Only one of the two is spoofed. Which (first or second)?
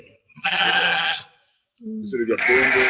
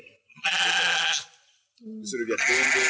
first